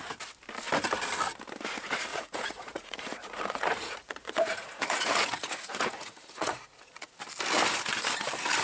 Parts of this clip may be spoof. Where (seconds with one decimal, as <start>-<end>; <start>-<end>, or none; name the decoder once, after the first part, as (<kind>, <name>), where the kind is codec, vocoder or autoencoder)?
2.1-7.2 (vocoder, Vocos)